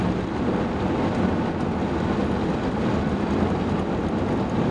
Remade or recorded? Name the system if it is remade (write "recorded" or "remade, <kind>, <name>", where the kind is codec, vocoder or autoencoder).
recorded